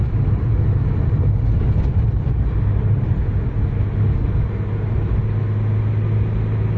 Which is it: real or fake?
real